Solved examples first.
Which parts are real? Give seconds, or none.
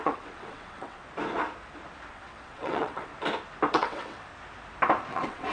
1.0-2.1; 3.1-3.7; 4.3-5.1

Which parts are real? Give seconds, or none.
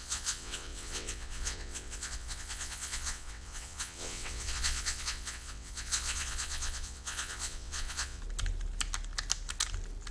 8.2-10.1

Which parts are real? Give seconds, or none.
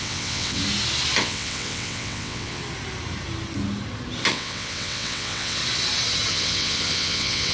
0.6-1.2; 2.6-4.3; 5.6-6.3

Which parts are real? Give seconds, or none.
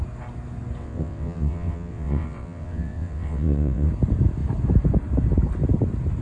0.0-0.8; 3.9-6.2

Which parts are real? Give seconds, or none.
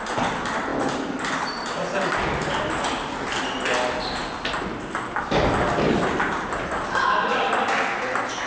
0.0-8.5